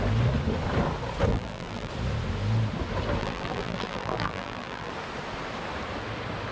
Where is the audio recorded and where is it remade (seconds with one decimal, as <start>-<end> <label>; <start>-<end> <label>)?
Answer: 0.0-1.3 recorded; 1.3-1.9 remade; 1.9-3.2 recorded; 3.2-4.9 remade; 4.9-6.5 recorded